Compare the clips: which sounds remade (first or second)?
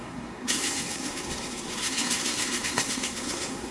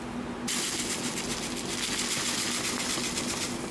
first